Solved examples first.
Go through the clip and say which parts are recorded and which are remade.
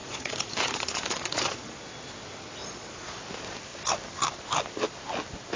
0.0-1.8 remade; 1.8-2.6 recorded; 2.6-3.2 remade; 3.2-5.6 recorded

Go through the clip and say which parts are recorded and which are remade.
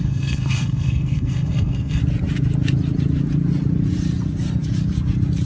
0.0-2.0 remade; 2.0-5.5 recorded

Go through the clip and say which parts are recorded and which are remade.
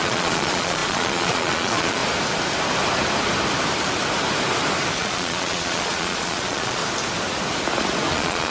0.0-2.0 remade; 2.0-4.9 recorded; 4.9-6.8 remade; 6.8-8.1 recorded; 8.1-8.5 remade